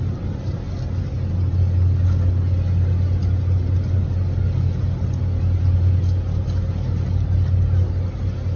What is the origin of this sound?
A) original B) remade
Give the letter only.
A